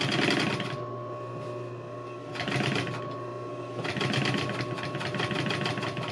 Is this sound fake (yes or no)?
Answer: no